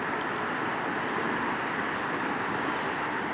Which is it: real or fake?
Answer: real